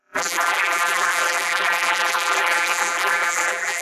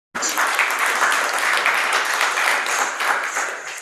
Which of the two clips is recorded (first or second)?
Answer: second